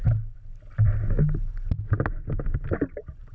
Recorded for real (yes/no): yes